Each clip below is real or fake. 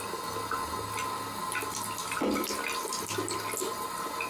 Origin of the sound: real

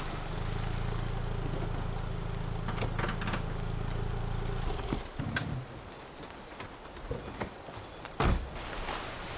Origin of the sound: real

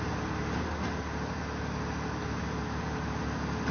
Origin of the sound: real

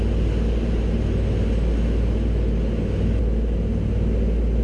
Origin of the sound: real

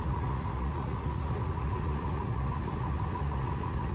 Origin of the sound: fake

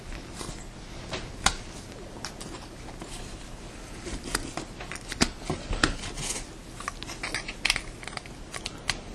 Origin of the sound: real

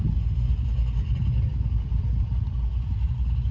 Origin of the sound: real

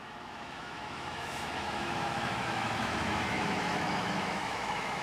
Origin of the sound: fake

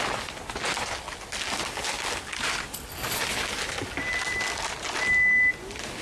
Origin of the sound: real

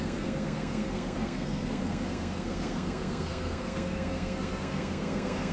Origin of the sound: fake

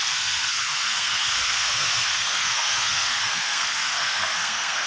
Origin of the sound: fake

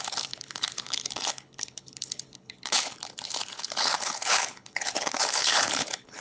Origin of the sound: fake